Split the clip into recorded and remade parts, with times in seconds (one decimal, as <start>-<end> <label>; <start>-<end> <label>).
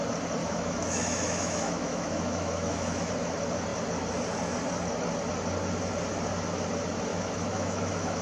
0.0-0.4 recorded; 0.4-3.1 remade; 3.1-7.1 recorded; 7.1-8.2 remade